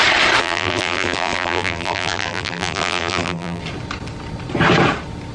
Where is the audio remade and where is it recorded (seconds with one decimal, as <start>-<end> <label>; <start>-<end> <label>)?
0.0-0.4 recorded; 0.4-3.6 remade; 3.6-5.3 recorded